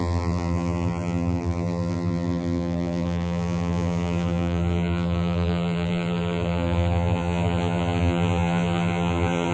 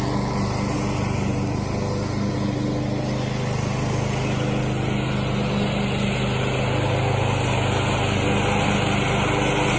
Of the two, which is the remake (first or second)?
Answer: first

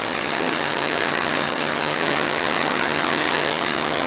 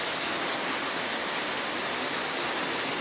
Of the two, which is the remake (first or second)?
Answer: first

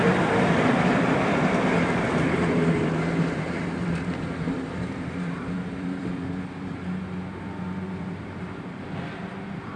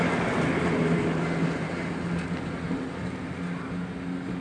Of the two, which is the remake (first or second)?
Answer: first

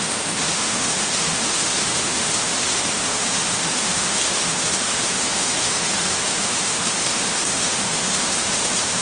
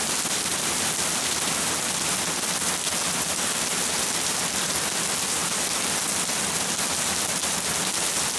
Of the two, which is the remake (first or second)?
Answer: first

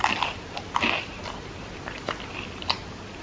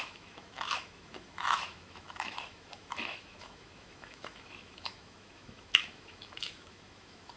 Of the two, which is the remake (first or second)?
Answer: second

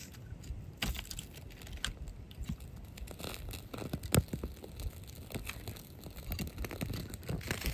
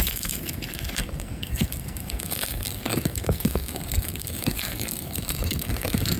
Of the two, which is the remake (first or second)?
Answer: second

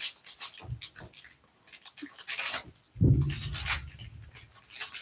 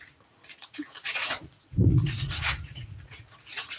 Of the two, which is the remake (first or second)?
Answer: second